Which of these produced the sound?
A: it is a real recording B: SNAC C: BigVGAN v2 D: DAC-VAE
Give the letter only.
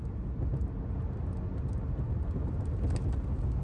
A